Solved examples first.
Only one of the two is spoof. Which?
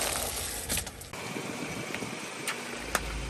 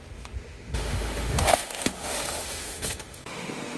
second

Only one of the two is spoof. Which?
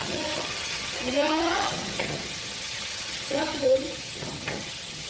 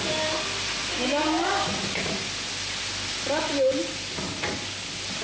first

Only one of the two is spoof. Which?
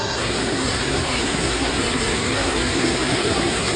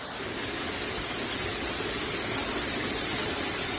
first